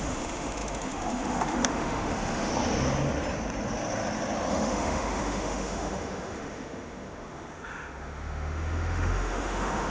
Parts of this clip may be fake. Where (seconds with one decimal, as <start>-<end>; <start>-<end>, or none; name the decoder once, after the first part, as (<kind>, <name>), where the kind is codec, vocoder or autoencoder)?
0.0-2.5 (autoencoder, DAC-VAE); 4.5-9.9